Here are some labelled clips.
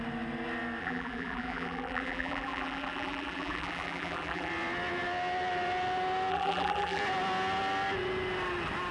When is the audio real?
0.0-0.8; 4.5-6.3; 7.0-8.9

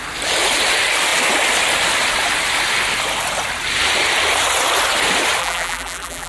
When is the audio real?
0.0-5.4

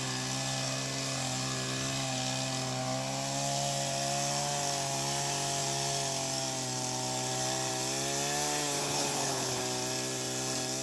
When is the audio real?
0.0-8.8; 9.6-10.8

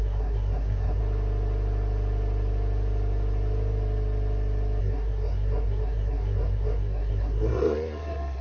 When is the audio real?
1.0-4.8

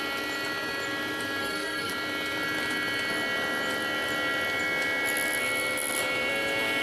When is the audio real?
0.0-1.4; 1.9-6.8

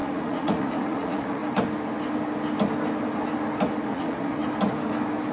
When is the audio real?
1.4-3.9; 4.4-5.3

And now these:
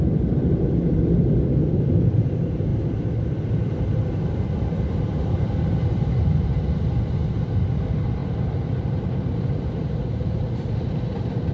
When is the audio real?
none